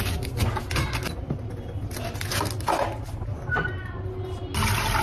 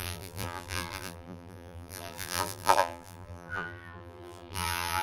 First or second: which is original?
first